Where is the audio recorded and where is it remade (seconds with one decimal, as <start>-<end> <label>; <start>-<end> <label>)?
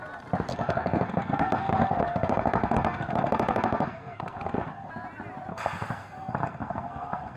0.0-0.5 recorded; 0.5-4.9 remade; 4.9-5.5 recorded; 5.5-7.4 remade